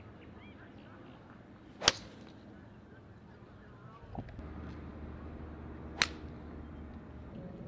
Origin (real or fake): real